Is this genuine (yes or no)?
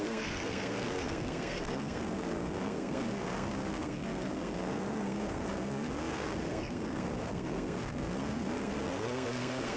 no